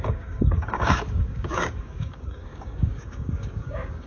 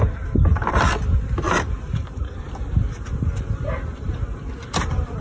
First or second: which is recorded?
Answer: second